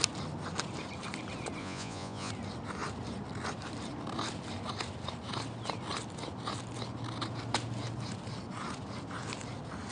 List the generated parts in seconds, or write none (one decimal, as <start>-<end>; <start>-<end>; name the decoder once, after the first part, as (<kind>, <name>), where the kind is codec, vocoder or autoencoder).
1.6-2.3 (vocoder, Vocos)